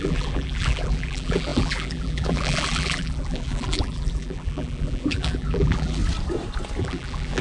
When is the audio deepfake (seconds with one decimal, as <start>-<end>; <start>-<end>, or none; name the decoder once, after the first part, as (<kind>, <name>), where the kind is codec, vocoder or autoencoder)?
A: 0.0-6.0 (vocoder, BigVGAN v2); 6.8-7.4